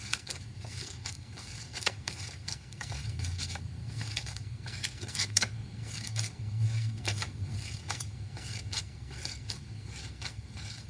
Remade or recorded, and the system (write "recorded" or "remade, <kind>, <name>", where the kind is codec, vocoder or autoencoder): remade, codec, SNAC